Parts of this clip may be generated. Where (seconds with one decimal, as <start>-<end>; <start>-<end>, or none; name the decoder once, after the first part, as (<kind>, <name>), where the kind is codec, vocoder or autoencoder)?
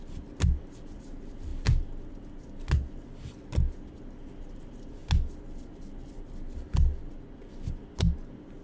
none